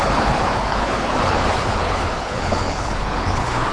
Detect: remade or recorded remade